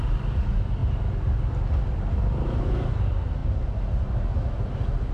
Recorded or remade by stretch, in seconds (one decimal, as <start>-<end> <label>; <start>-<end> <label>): 0.0-5.1 recorded

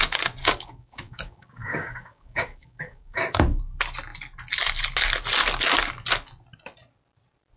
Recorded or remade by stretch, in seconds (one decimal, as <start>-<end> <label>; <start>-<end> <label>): 0.0-0.4 recorded; 0.4-3.6 remade; 3.6-7.6 recorded